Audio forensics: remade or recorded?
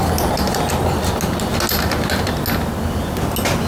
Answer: recorded